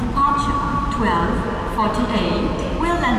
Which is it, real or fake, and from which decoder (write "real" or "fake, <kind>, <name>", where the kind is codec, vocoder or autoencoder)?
real